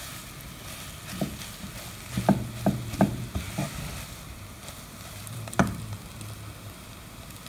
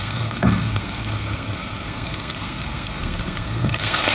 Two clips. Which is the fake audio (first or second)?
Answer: second